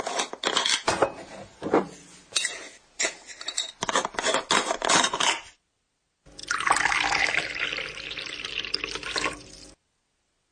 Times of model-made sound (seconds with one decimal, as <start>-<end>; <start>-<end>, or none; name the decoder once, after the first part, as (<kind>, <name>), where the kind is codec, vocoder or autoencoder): none